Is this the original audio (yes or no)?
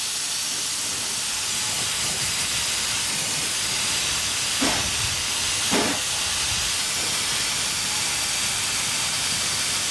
yes